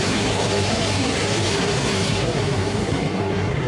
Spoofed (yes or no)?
yes